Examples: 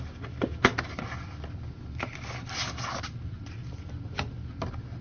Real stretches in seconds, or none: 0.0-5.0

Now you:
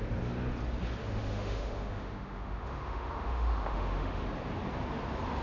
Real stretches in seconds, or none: 0.0-1.0; 4.2-5.4

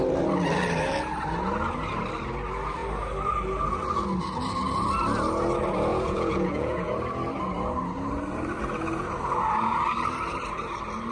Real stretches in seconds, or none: 0.0-5.9; 6.9-11.1